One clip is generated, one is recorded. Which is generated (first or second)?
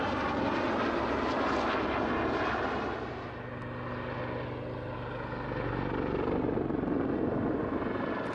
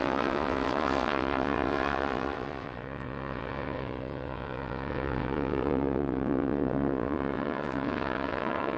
second